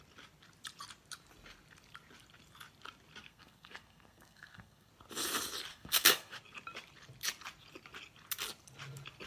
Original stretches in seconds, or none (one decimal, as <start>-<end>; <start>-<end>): 0.0-3.2; 4.9-5.7; 6.4-9.3